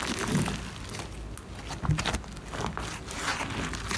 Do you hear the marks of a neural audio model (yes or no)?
no